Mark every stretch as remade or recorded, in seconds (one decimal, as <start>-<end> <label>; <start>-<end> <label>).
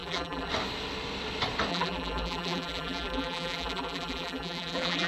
0.0-0.5 remade; 0.5-1.7 recorded; 1.7-5.1 remade